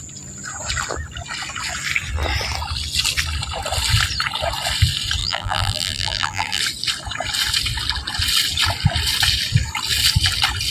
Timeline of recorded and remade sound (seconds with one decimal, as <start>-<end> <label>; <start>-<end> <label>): 0.0-5.2 recorded; 5.2-6.6 remade; 6.6-10.7 recorded